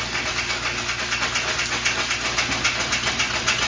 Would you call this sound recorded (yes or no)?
yes